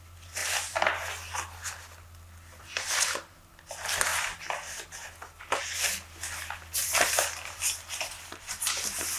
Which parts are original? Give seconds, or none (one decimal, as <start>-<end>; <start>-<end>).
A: 0.0-6.8

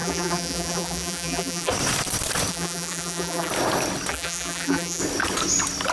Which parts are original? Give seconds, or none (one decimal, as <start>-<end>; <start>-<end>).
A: 1.7-2.5; 3.5-4.1; 5.0-5.9

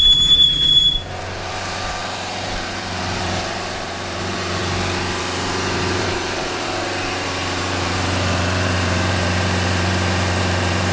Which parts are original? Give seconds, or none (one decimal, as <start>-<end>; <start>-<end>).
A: 4.6-5.2

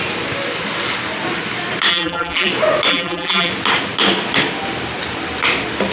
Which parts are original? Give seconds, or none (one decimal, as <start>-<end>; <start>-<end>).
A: 0.0-1.9; 2.5-2.9; 3.5-5.9